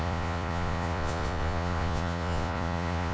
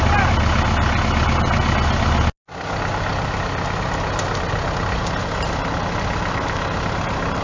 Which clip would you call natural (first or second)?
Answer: second